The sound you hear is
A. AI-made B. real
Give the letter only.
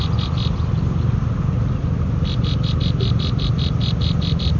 B